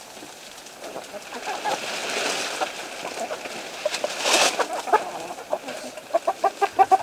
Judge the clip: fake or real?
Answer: real